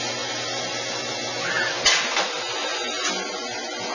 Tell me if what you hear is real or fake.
real